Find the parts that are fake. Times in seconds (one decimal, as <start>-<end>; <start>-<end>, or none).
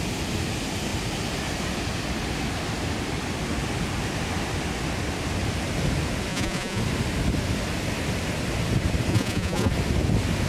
6.3-6.8; 9.1-9.7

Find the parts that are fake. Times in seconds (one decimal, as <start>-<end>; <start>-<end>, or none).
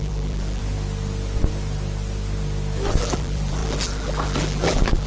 0.0-0.6; 3.0-5.1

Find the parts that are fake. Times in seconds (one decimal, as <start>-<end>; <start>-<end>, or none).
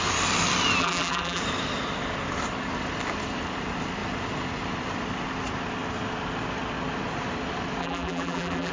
0.8-1.4; 7.8-8.7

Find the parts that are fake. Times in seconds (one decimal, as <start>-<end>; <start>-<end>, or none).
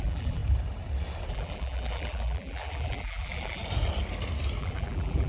0.0-0.4; 1.3-3.6; 4.6-5.3